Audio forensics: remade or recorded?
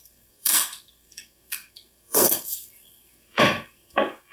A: remade